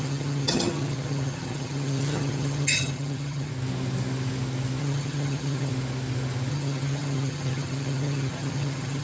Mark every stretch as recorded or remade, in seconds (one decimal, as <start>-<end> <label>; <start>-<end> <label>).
0.0-3.5 remade; 3.5-4.8 recorded; 4.8-5.7 remade; 5.7-6.5 recorded; 6.5-9.0 remade